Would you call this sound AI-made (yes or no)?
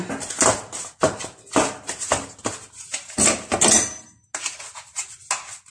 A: no